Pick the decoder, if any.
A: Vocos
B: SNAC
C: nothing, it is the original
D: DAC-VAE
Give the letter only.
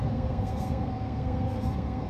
B